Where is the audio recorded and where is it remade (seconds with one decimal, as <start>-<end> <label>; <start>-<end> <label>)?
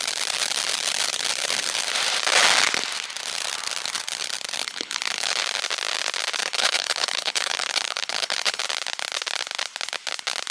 0.0-4.6 recorded; 4.6-5.4 remade; 5.4-6.4 recorded; 6.4-8.6 remade; 8.6-10.5 recorded